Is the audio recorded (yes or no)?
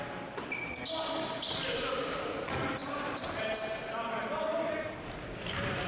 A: yes